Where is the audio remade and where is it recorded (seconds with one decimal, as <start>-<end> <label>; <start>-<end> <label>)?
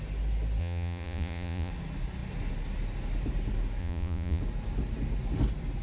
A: 0.0-0.6 recorded; 0.6-1.7 remade; 1.7-3.8 recorded; 3.8-4.4 remade; 4.4-5.8 recorded